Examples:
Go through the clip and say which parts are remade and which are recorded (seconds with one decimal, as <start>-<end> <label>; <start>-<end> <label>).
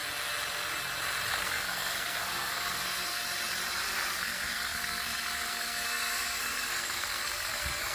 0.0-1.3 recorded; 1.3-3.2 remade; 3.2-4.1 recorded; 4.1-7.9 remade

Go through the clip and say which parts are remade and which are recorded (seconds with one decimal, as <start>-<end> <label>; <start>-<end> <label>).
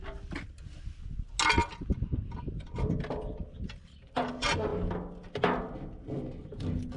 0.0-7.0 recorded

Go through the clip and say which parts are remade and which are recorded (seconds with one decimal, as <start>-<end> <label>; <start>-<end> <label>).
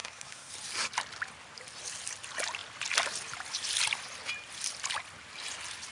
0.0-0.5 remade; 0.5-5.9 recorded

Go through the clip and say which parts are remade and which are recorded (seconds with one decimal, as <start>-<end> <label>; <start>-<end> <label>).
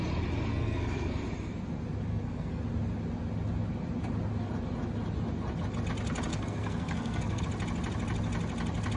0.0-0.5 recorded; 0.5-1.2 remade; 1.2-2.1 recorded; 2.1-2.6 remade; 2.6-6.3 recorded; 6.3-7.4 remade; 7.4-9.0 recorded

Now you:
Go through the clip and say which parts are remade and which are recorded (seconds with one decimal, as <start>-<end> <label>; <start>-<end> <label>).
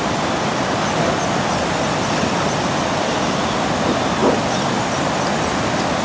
0.0-6.0 recorded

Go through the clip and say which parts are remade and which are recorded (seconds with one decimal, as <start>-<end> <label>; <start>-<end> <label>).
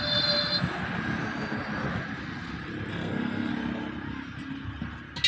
0.0-2.9 recorded; 2.9-3.5 remade; 3.5-5.3 recorded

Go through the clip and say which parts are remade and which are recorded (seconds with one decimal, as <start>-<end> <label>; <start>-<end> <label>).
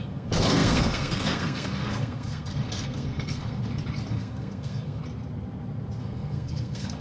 0.0-3.6 remade; 3.6-4.1 recorded; 4.1-5.0 remade; 5.0-6.0 recorded; 6.0-7.0 remade